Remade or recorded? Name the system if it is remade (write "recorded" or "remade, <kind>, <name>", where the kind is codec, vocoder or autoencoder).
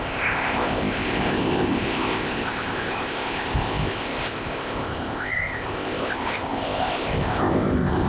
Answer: remade, codec, ZipCodec